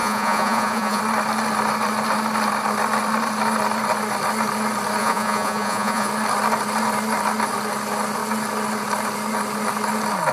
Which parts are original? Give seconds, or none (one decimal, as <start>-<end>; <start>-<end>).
1.0-5.0; 6.1-10.3